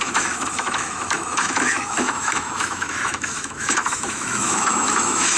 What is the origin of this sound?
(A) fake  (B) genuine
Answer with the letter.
A